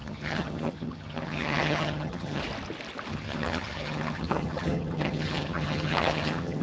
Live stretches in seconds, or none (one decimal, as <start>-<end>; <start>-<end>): 2.4-3.1